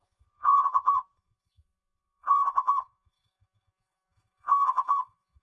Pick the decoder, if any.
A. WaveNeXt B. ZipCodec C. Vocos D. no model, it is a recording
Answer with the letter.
C